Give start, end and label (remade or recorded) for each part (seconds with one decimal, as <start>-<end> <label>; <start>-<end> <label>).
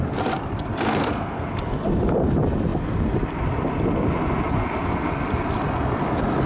0.0-0.9 recorded; 0.9-1.5 remade; 1.5-6.5 recorded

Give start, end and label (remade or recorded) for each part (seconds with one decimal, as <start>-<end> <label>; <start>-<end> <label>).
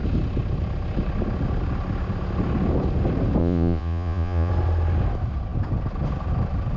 0.0-3.4 recorded; 3.4-4.5 remade; 4.5-6.8 recorded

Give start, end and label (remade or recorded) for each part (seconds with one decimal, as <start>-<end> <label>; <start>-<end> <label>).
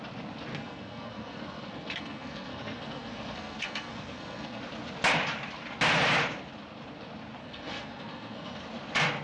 0.0-0.5 recorded; 0.5-4.6 remade; 4.6-7.4 recorded; 7.4-8.6 remade; 8.6-9.2 recorded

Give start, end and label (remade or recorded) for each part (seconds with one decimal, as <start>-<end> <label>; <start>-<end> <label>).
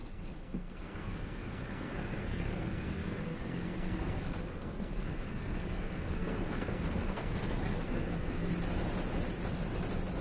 0.0-8.5 remade; 8.5-10.2 recorded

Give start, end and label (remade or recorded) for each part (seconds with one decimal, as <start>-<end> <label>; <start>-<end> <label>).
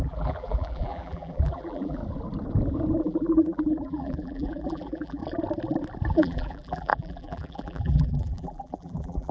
0.0-2.0 remade; 2.0-3.0 recorded; 3.0-5.2 remade; 5.2-6.1 recorded; 6.1-9.3 remade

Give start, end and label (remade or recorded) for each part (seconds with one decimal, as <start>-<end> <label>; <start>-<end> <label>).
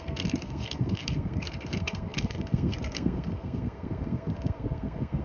0.0-5.2 remade